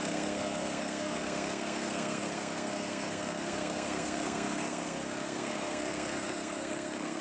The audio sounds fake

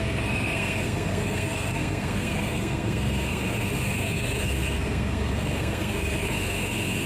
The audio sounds fake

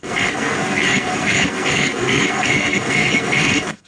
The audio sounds fake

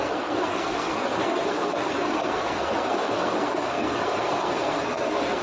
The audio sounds fake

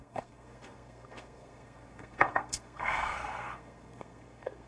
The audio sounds fake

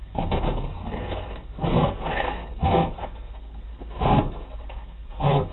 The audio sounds fake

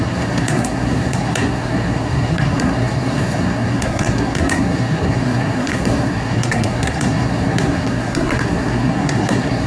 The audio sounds fake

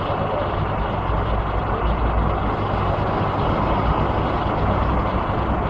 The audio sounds real